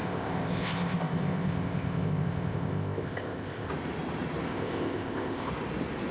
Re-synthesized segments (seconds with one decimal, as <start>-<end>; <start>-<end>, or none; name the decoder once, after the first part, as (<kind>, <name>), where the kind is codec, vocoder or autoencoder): 0.0-3.7 (codec, ZipCodec); 4.5-5.5